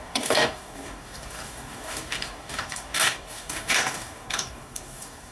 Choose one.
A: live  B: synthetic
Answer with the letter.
B